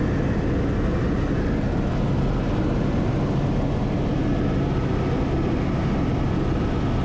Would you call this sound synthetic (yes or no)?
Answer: no